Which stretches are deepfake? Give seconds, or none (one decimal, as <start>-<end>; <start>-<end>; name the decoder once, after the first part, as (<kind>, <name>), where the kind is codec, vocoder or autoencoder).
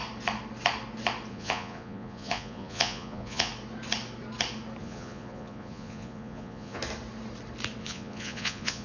1.3-3.5 (vocoder, Vocos); 4.8-6.8; 7.8-8.8